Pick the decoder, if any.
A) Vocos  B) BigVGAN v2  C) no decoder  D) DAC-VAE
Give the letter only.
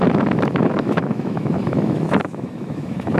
D